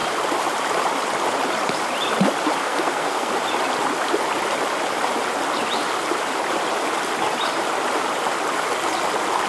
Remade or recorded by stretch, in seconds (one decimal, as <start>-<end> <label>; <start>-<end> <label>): 0.0-2.6 recorded; 2.6-3.3 remade; 3.3-9.5 recorded